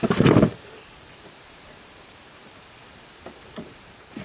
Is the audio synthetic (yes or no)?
yes